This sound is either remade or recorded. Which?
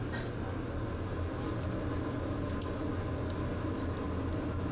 recorded